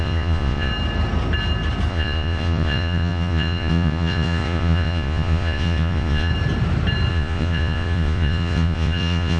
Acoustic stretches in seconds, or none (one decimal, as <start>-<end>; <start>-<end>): 0.7-1.9; 6.3-7.1